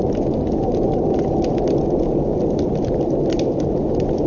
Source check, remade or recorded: recorded